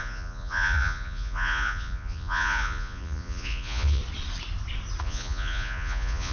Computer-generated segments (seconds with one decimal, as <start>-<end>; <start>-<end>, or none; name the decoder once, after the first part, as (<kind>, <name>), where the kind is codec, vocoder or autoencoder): 0.0-4.0 (vocoder, Vocos); 5.0-6.3